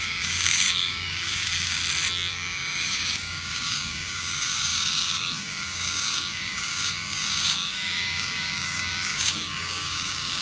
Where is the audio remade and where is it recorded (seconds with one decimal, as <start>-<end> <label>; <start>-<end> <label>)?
0.0-1.8 remade; 1.8-2.3 recorded; 2.3-10.4 remade